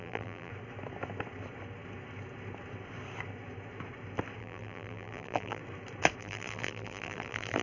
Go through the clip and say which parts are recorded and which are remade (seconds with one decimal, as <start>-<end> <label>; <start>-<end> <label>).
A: 0.0-0.5 remade; 0.5-4.4 recorded; 4.4-5.6 remade; 5.6-6.2 recorded; 6.2-7.6 remade